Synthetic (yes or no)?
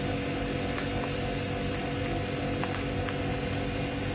no